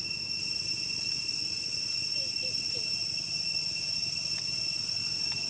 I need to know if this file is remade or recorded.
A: recorded